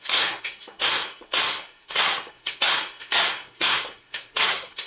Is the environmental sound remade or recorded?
remade